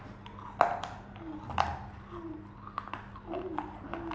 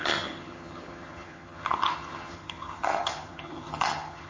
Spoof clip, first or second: second